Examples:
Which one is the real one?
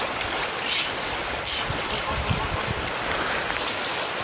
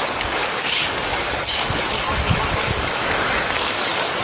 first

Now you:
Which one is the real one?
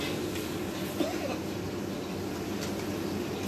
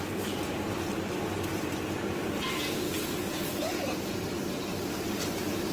first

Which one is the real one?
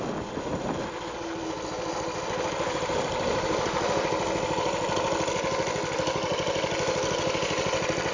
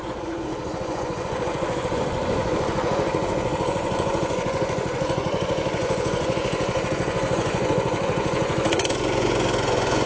first